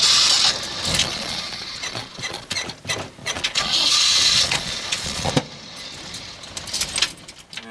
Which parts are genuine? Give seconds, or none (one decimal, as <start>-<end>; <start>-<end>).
0.0-1.0; 2.7-3.2; 5.3-7.7